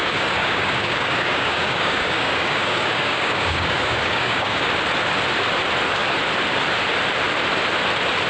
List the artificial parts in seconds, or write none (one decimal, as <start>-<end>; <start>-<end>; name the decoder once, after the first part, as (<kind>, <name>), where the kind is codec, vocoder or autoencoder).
0.0-4.7 (codec, DAC)